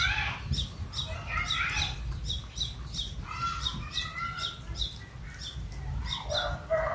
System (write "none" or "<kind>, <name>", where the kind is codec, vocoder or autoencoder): none